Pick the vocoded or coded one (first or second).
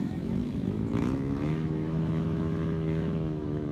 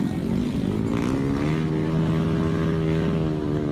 first